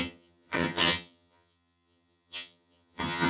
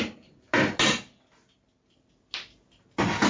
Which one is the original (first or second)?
second